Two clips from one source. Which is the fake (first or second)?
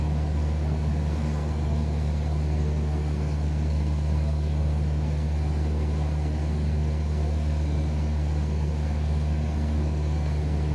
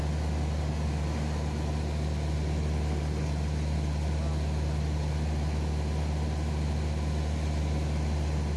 first